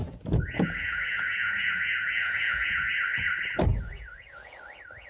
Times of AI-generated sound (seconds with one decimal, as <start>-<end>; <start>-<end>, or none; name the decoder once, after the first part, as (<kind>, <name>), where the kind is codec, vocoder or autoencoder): 0.0-2.9 (vocoder, Vocos); 3.7-4.6